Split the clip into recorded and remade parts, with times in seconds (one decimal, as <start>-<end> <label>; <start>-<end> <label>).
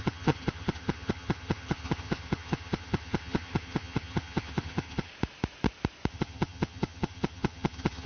0.0-5.1 remade; 5.1-6.1 recorded; 6.1-8.1 remade